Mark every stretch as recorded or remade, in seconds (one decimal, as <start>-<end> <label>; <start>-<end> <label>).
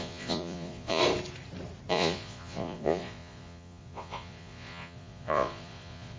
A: 0.0-1.0 remade; 1.0-1.9 recorded; 1.9-6.2 remade